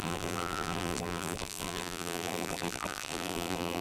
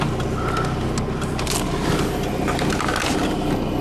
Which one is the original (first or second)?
second